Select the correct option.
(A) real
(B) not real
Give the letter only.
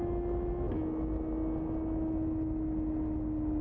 A